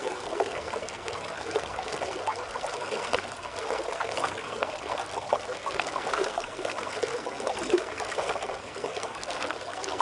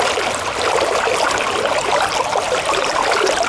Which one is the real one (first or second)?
second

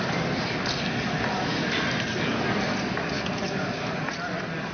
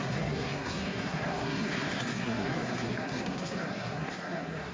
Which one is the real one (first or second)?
first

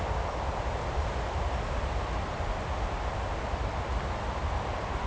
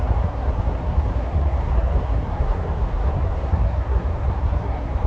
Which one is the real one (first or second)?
first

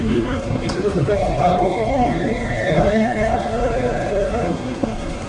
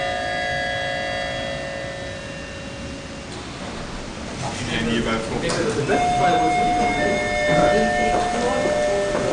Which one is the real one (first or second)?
second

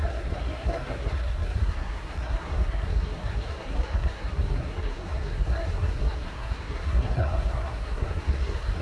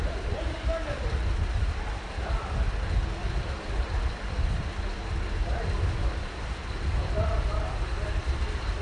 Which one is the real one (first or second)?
second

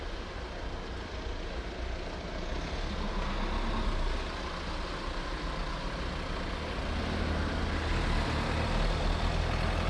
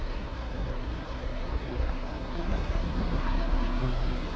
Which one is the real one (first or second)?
first